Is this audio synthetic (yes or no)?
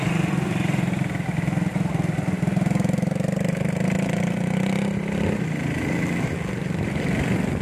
no